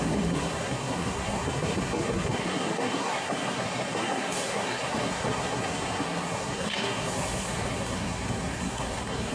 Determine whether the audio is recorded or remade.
remade